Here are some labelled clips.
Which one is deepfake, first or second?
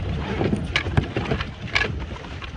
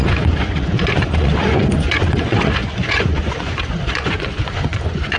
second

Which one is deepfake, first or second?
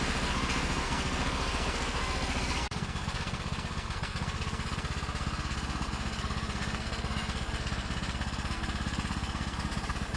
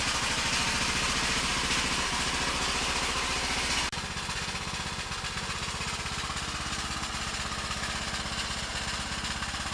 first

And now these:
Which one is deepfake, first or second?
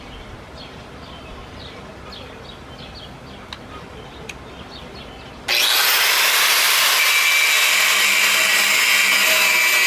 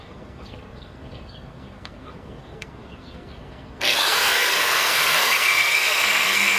second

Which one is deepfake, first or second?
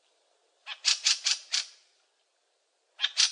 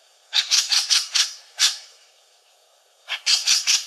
second